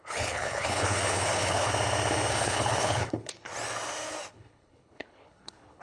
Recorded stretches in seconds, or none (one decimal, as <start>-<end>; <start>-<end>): 1.7-2.3; 3.5-4.3